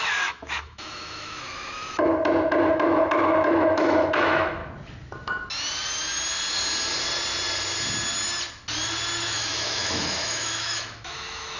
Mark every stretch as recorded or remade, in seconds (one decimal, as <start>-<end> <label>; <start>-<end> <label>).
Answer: 0.0-2.1 remade; 2.1-2.6 recorded; 2.6-4.6 remade; 4.6-9.2 recorded; 9.2-11.6 remade